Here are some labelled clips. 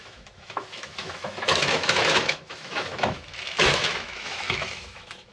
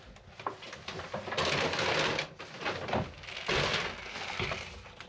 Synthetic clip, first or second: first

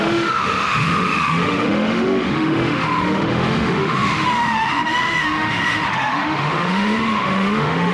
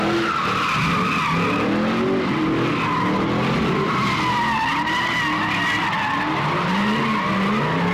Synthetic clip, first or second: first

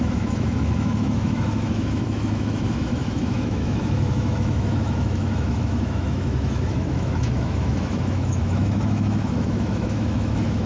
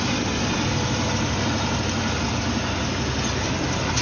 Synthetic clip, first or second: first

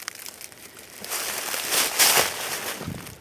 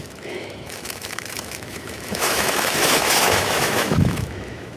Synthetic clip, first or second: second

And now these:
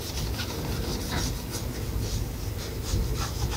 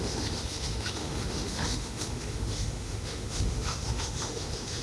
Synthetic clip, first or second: second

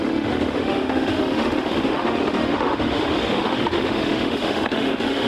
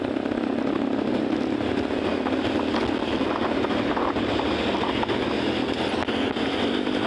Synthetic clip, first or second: first